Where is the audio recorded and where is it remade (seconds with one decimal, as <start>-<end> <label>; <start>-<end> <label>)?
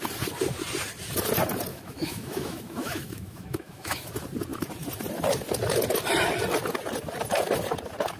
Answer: 0.0-1.7 recorded; 1.7-4.1 remade; 4.1-8.2 recorded